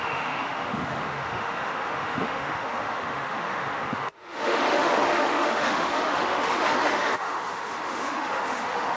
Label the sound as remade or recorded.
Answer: remade